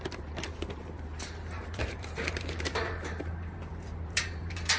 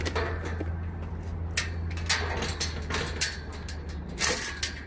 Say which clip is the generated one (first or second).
first